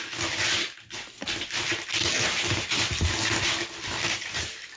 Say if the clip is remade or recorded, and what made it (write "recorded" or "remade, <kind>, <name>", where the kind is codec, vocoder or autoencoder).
recorded